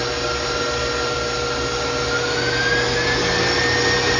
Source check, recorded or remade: recorded